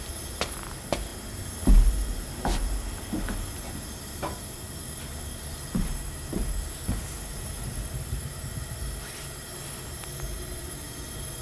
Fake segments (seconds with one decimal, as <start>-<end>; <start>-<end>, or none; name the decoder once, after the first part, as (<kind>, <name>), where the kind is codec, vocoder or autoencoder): none

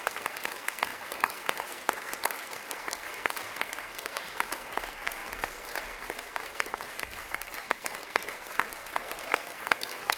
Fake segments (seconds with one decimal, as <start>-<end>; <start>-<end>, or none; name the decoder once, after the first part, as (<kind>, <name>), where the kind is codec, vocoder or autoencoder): 0.0-10.2 (codec, SNAC)

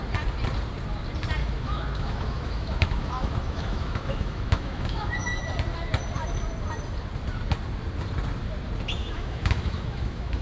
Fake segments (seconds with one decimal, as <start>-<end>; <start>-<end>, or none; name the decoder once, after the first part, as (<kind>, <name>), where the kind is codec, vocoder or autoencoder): 1.4-5.4 (autoencoder, DAC-VAE); 9.0-10.4

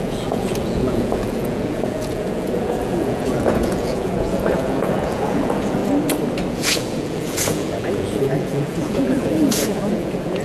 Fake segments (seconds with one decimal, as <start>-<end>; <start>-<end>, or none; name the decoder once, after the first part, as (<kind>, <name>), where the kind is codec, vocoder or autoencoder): 0.0-5.8 (vocoder, Vocos); 6.5-10.4

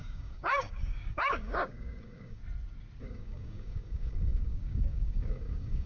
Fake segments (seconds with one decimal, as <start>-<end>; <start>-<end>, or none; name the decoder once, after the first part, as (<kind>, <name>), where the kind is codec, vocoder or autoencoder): 0.0-2.4 (codec, DAC); 3.0-5.9

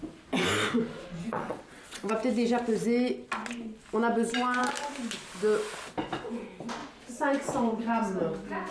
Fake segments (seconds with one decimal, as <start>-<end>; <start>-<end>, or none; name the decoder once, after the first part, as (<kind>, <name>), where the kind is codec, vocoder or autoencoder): 1.2-2.1 (vocoder, WaveNeXt)